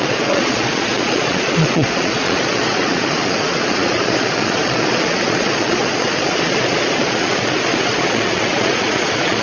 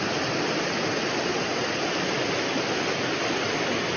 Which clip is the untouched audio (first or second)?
second